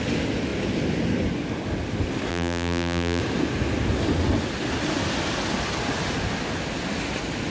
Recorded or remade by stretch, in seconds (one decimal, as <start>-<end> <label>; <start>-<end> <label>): 0.0-2.3 recorded; 2.3-3.2 remade; 3.2-7.5 recorded